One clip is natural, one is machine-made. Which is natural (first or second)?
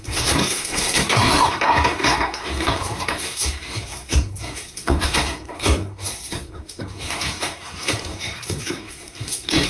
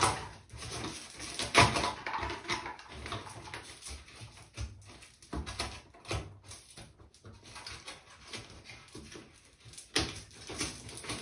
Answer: second